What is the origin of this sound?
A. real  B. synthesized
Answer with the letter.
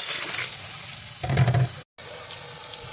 A